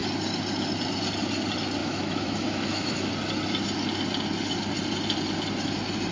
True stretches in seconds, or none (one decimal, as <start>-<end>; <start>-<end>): 0.0-1.8; 3.1-6.1

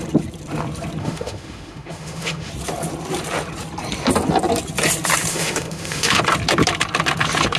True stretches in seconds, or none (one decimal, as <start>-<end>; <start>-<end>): 0.0-1.0; 2.5-5.3; 6.2-7.6